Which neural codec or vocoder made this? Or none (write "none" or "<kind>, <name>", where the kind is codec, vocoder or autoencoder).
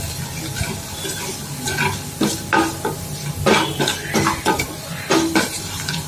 none